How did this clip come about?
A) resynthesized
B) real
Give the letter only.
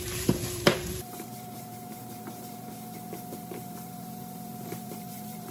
A